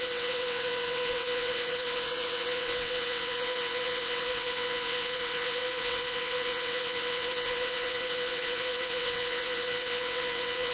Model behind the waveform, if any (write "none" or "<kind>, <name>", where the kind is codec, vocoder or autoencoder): vocoder, WaveNeXt